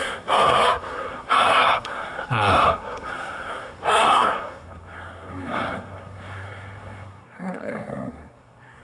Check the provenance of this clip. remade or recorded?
remade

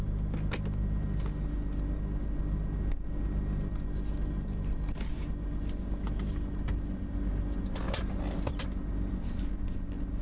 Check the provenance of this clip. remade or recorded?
recorded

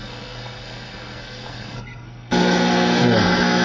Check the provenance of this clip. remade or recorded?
remade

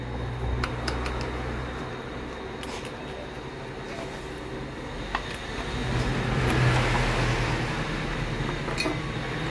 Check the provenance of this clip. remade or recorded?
recorded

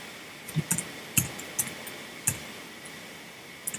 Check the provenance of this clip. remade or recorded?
recorded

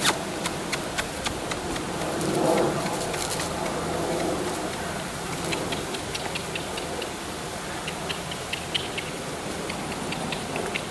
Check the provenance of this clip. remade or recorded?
recorded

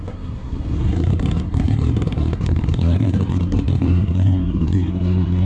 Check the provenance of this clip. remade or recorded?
remade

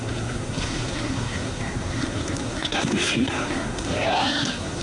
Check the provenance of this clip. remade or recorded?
remade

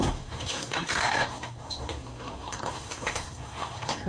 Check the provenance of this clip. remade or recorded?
remade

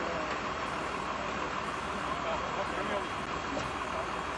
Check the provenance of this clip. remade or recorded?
recorded